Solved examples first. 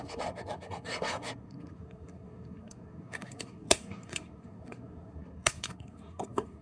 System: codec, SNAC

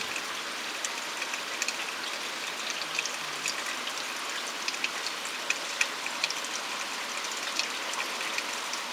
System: none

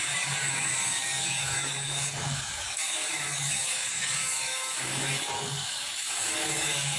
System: codec, DAC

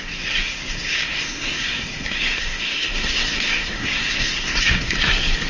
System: codec, SNAC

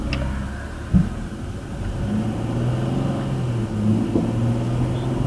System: none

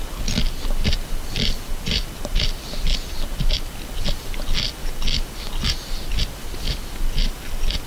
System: none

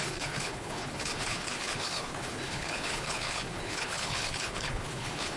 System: codec, HILCodec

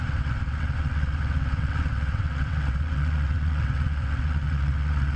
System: vocoder, WaveNeXt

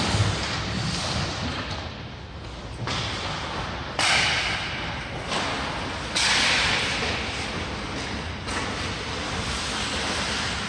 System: none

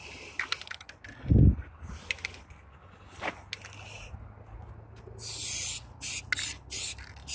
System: none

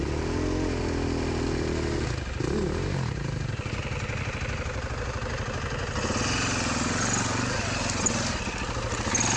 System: none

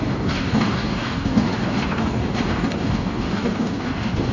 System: codec, DAC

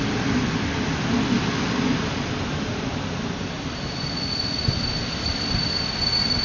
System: none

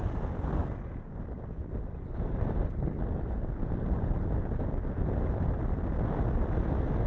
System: none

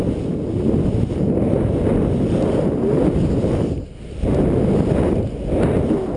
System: none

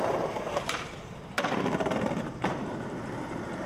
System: vocoder, BigVGAN v2